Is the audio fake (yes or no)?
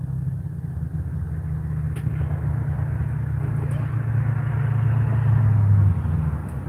no